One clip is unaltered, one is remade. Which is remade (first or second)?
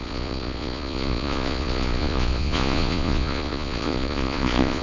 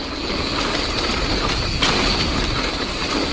first